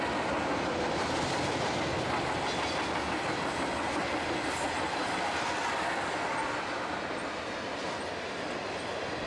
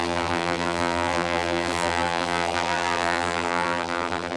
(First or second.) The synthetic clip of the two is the second